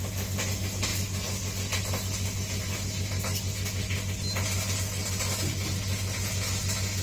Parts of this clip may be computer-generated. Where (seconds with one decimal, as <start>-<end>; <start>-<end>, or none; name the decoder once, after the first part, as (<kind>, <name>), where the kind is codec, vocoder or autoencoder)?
none